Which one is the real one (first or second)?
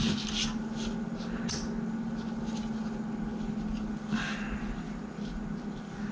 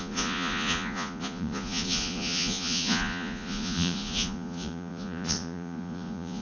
first